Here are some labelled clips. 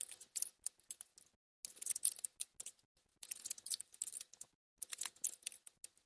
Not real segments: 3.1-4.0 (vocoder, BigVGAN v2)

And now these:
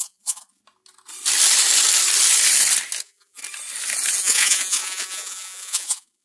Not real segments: 0.0-0.6 (vocoder, Vocos); 3.0-3.4; 4.2-6.2

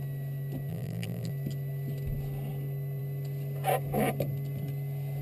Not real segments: 0.7-1.3 (vocoder, BigVGAN v2)

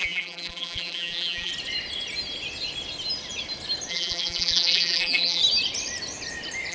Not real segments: 0.0-1.5 (vocoder, BigVGAN v2); 3.9-5.4

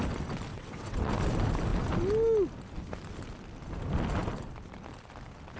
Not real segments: 0.5-1.1 (vocoder, WaveNeXt)